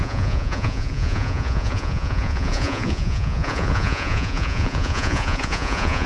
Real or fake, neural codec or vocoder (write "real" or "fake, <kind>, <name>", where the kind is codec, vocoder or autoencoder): fake, vocoder, Vocos